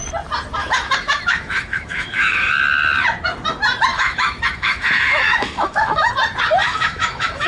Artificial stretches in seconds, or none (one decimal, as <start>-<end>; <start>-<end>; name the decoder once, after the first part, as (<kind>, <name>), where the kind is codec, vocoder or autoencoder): 0.6-2.6 (autoencoder, DAC-VAE); 3.9-6.1; 6.6-7.5